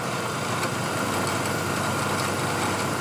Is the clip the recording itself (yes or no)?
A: yes